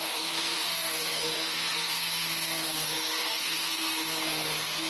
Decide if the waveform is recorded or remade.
remade